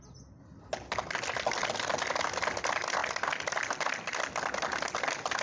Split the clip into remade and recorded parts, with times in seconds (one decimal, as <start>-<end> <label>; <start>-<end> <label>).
0.0-5.4 recorded